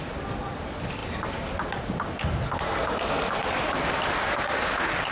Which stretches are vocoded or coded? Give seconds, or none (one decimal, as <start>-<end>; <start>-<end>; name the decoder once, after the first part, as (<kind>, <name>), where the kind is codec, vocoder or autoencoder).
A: none